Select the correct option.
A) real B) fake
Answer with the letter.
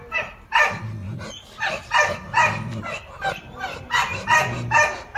A